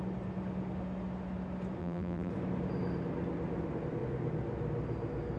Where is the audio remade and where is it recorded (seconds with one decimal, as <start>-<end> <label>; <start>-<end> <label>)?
0.0-1.8 recorded; 1.8-2.3 remade; 2.3-5.4 recorded